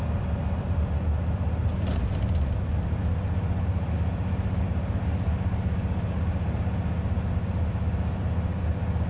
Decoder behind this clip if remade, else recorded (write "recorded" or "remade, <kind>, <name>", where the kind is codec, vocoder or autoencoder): recorded